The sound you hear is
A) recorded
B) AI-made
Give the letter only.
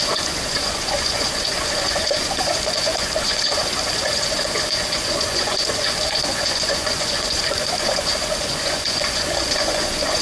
B